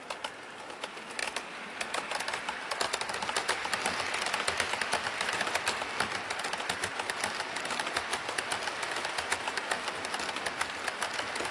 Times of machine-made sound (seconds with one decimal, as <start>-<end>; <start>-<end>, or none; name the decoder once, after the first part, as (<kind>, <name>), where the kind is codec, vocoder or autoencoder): none